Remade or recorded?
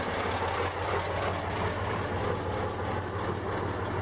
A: recorded